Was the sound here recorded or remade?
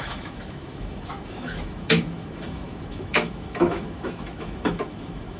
remade